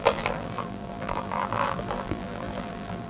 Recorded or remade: remade